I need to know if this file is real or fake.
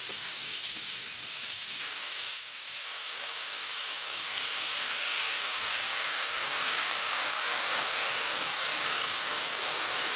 fake